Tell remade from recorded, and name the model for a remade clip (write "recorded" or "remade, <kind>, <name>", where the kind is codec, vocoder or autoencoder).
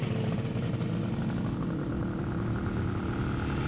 recorded